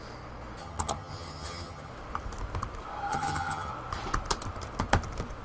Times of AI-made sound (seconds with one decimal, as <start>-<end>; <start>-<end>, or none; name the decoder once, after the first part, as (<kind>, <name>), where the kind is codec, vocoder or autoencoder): 0.6-1.9 (vocoder, HiFi-GAN); 3.1-3.7